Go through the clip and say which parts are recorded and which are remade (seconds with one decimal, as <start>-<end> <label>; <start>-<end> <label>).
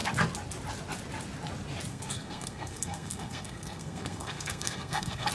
0.0-1.9 recorded; 1.9-5.3 remade